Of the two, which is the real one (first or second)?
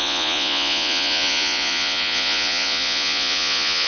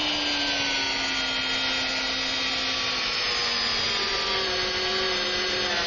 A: second